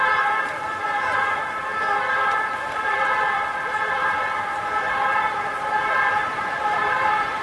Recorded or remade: remade